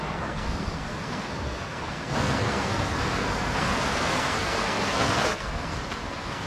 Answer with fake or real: fake